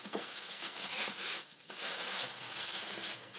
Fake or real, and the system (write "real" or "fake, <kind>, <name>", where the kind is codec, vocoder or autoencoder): fake, codec, SNAC